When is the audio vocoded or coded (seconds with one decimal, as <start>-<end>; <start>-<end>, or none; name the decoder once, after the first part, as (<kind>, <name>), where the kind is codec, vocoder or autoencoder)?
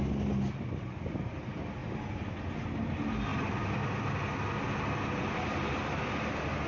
none